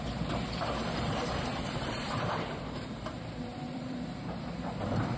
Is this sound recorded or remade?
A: remade